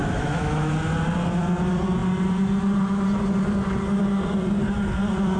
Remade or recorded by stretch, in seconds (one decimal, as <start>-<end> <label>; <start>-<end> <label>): 0.0-0.7 remade; 0.7-5.4 recorded